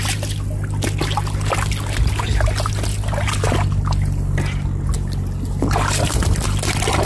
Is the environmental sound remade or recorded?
recorded